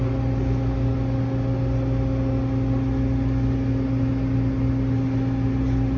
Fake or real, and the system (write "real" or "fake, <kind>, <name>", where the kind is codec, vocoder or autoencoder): real